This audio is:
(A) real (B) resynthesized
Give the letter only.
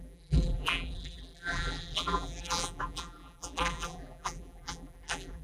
B